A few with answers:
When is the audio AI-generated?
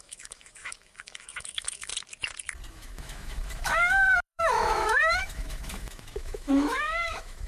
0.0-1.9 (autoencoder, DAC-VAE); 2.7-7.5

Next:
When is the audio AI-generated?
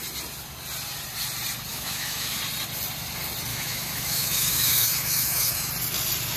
1.7-2.4 (autoencoder, DAC-VAE); 3.5-5.7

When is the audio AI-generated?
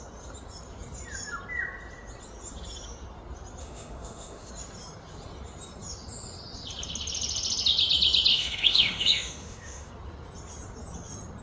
3.6-4.5 (autoencoder, DAC-VAE); 8.3-9.9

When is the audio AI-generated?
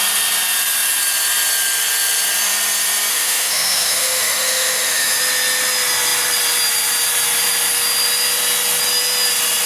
3.1-5.2 (autoencoder, DAC-VAE)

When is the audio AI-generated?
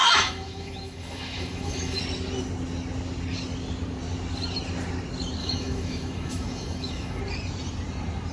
0.0-2.0 (autoencoder, DAC-VAE); 5.4-7.2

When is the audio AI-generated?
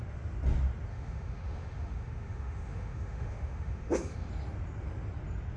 0.9-4.3 (autoencoder, DAC-VAE)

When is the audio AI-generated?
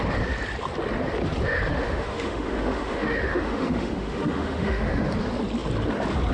1.7-5.1 (autoencoder, DAC-VAE)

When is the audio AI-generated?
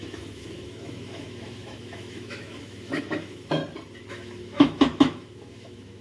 0.0-3.6 (autoencoder, DAC-VAE); 4.1-6.0